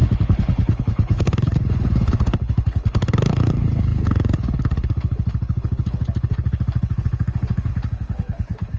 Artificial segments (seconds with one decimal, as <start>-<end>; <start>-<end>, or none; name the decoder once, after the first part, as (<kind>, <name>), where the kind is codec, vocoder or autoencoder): 0.0-8.8 (codec, HILCodec)